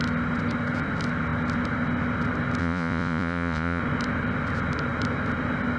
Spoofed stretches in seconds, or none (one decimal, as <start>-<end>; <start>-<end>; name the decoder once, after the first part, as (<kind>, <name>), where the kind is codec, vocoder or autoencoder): 2.6-3.8 (vocoder, Vocos)